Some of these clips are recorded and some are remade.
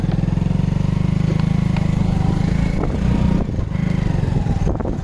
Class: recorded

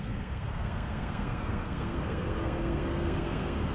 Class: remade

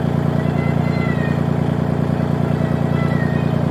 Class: recorded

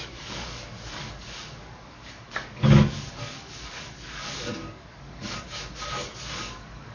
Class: remade